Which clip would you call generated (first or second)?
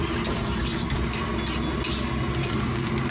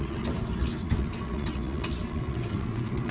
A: second